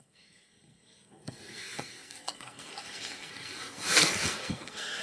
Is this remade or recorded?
remade